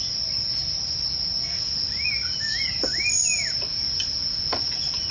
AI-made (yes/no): no